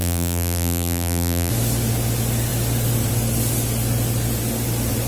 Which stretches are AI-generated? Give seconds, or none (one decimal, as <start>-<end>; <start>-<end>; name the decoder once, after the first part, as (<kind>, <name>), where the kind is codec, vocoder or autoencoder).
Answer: 0.0-1.5 (vocoder, BigVGAN v2)